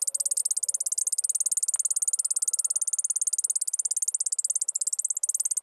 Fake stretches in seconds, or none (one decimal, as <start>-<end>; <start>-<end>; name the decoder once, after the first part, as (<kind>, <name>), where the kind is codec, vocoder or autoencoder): none